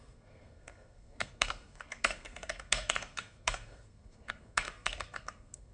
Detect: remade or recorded remade